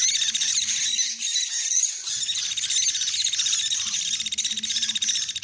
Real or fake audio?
real